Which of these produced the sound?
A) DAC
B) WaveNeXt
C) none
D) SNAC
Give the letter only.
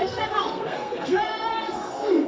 D